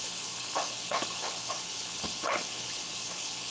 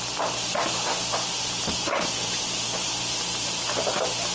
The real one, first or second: second